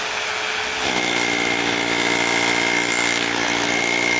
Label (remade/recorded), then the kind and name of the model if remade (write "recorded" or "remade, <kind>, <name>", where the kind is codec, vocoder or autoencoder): recorded